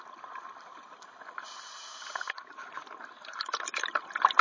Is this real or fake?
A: real